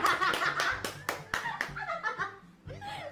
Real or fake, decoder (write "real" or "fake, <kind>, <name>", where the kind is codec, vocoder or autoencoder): real